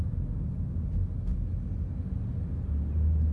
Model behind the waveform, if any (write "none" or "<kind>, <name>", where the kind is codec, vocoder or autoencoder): none